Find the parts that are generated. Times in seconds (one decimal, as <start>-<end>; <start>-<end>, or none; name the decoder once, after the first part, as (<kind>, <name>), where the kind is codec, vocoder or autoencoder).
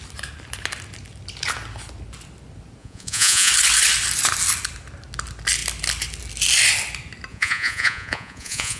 2.8-3.5 (vocoder, Vocos); 7.3-8.8